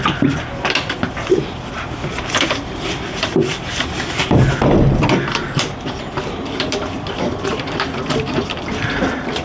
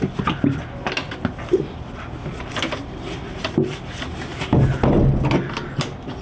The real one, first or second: second